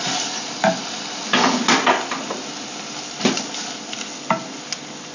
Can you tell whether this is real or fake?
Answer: real